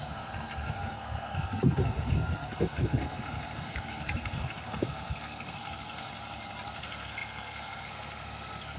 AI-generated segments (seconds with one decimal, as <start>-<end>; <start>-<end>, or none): 0.0-6.1; 6.8-8.8